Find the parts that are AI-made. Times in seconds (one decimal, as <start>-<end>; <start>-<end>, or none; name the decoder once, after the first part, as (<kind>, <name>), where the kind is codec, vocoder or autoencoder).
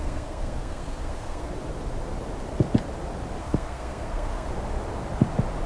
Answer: 0.0-1.5 (codec, SNAC); 3.4-4.5